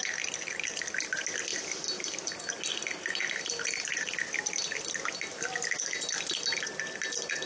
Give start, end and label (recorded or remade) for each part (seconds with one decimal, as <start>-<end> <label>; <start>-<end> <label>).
0.0-7.5 recorded